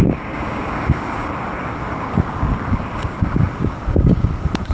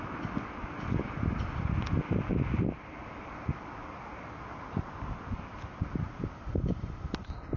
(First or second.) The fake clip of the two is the first